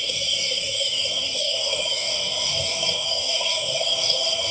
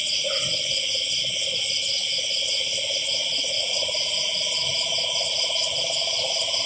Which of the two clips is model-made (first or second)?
first